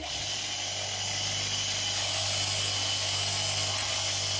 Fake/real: real